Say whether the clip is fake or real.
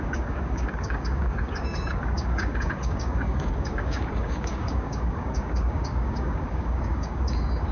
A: fake